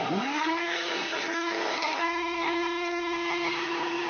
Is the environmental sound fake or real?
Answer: fake